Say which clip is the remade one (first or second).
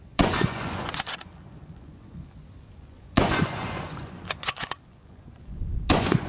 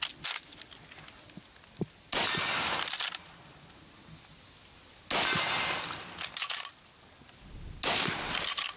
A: first